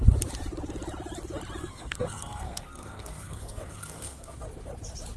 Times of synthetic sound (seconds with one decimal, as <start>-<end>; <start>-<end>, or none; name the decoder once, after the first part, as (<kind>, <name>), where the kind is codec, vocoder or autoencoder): 1.6-4.4 (codec, SNAC)